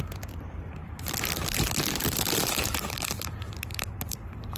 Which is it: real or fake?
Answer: fake